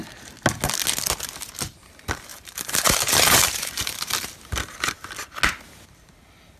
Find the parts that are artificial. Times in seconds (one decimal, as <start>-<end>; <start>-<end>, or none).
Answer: 2.3-4.1